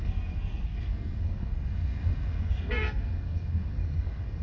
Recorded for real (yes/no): no